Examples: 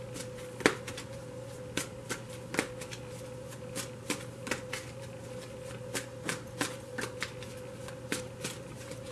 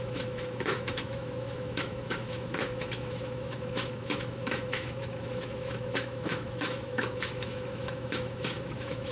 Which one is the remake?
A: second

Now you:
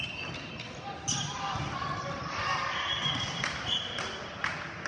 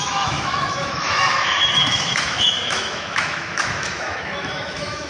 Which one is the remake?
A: second